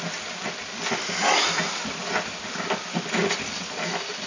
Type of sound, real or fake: real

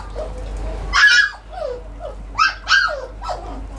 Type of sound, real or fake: real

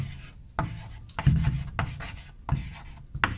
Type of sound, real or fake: real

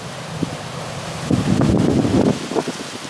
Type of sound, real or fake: real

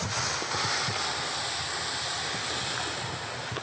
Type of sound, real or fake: real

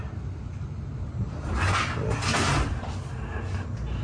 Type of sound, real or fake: real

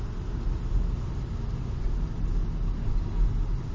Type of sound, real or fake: real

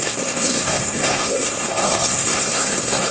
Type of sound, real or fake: fake